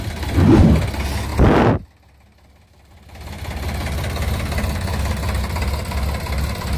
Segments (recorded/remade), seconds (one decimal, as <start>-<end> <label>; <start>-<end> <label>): 0.0-6.8 recorded